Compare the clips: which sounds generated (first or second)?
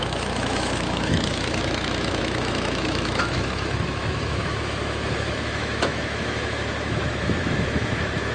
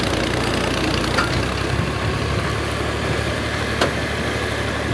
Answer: first